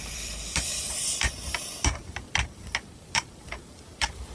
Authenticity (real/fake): fake